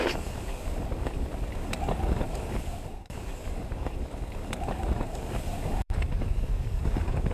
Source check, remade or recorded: remade